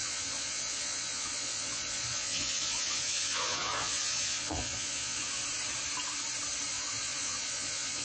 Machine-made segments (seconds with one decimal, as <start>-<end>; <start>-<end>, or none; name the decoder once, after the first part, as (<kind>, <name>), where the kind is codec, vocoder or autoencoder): 0.0-5.4 (vocoder, Vocos); 6.7-8.0